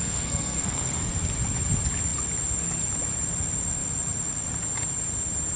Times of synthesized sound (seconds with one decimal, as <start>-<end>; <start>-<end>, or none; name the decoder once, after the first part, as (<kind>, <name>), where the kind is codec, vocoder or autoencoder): 0.0-1.1 (codec, SNAC)